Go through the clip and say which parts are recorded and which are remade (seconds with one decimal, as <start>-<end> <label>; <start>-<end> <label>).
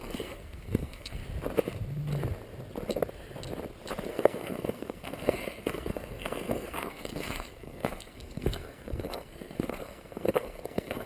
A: 0.0-1.2 remade; 1.2-4.1 recorded; 4.1-11.1 remade